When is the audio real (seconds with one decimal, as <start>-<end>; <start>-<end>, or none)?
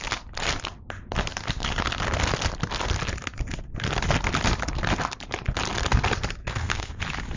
0.0-6.4; 7.0-7.4